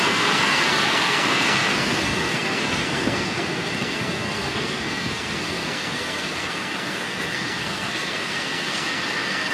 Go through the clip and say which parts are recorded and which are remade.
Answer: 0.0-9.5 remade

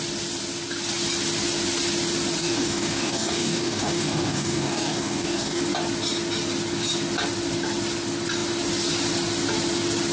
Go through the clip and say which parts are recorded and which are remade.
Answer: 0.0-2.4 recorded; 2.4-5.6 remade; 5.6-10.1 recorded

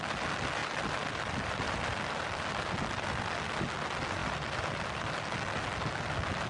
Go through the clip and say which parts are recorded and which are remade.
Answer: 0.0-0.6 recorded; 0.6-1.8 remade; 1.8-4.2 recorded; 4.2-5.1 remade; 5.1-6.5 recorded

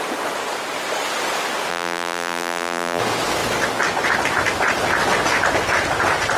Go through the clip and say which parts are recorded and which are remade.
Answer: 0.0-1.7 recorded; 1.7-3.0 remade; 3.0-6.4 recorded

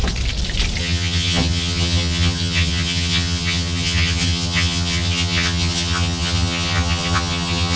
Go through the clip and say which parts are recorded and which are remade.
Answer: 0.0-0.8 recorded; 0.8-7.8 remade